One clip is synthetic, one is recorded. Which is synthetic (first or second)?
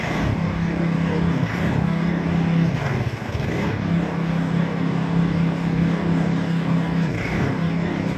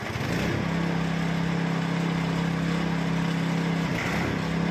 first